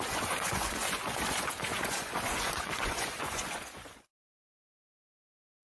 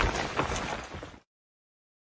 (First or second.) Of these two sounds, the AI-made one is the first